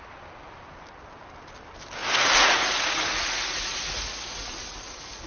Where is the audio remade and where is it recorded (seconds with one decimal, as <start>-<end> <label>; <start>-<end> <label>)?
0.0-2.0 recorded; 2.0-5.3 remade